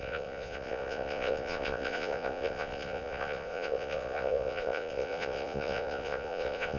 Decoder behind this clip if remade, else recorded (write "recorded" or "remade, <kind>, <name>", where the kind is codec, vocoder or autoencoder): remade, vocoder, Vocos